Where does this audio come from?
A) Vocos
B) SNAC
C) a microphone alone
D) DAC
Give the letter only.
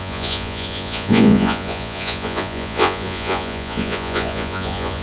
A